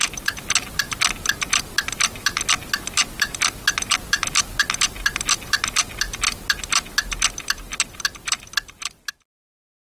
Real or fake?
real